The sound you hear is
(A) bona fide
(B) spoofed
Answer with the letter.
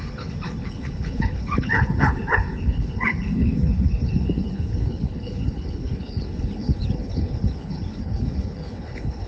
B